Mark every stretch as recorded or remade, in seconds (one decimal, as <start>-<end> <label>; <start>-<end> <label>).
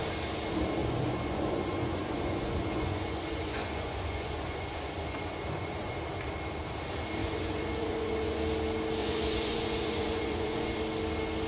0.0-0.8 recorded; 0.8-6.0 remade; 6.0-7.2 recorded; 7.2-8.4 remade; 8.4-9.0 recorded; 9.0-10.8 remade; 10.8-11.5 recorded